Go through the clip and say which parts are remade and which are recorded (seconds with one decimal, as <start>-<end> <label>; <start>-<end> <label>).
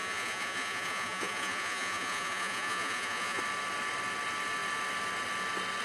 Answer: 0.0-3.4 remade; 3.4-5.8 recorded